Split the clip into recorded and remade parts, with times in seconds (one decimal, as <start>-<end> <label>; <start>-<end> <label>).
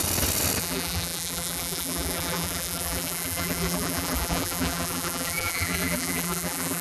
0.0-0.6 recorded; 0.6-6.8 remade